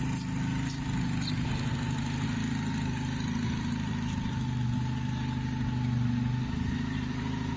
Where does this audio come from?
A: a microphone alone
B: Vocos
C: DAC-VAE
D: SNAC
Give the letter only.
A